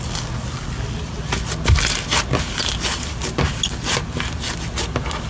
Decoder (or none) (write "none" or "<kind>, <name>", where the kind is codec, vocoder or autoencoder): none